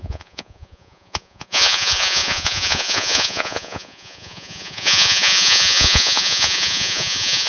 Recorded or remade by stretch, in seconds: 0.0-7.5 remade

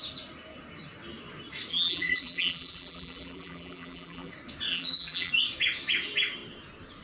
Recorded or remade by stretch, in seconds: 0.0-1.7 recorded; 1.7-4.3 remade; 4.3-4.7 recorded; 4.7-5.3 remade; 5.3-7.0 recorded

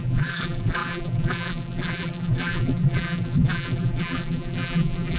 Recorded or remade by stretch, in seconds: 0.0-5.2 remade

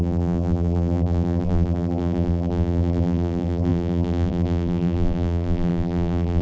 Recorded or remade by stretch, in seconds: 0.0-6.4 remade

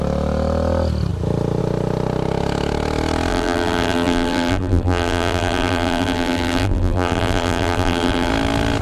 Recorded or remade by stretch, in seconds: 0.0-3.3 recorded; 3.3-8.3 remade; 8.3-8.8 recorded